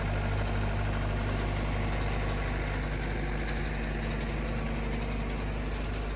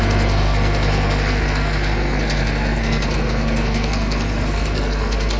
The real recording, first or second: first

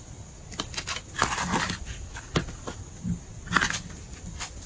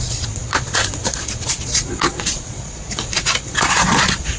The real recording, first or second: first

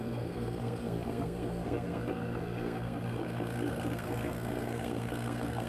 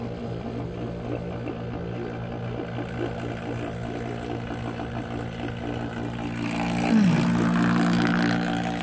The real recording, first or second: second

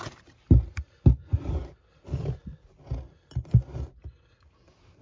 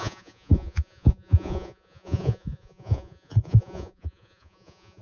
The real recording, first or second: first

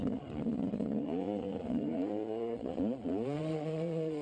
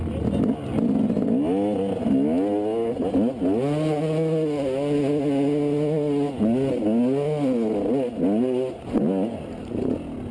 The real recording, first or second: second